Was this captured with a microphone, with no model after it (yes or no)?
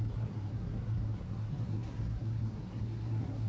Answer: no